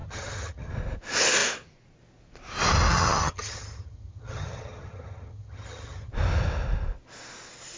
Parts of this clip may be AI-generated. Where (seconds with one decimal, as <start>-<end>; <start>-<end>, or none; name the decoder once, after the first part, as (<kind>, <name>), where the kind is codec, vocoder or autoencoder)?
0.0-0.7 (vocoder, HiFi-GAN); 2.9-6.1